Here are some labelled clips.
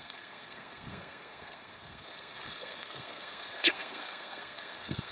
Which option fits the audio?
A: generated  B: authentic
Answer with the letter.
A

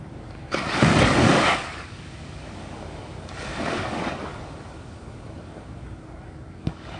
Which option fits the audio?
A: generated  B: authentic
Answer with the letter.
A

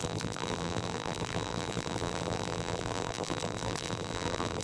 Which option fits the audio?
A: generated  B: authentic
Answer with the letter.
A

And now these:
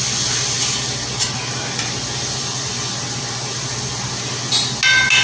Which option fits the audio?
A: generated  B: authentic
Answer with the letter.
B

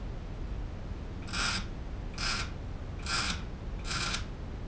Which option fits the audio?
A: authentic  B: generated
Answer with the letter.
A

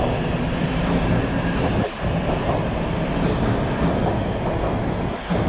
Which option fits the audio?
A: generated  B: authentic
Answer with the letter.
B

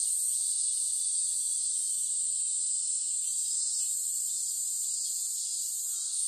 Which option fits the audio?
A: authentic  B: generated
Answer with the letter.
B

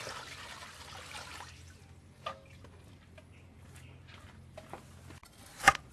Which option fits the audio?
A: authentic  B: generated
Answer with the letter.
A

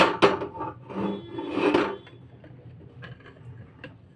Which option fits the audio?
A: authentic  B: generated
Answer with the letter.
A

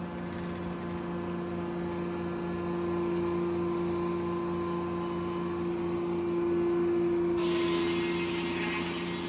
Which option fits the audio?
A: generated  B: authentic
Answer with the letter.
B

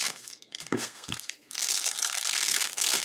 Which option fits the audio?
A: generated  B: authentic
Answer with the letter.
A